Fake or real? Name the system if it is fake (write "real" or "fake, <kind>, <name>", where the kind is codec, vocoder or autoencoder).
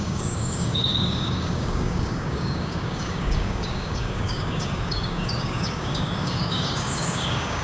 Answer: fake, codec, DAC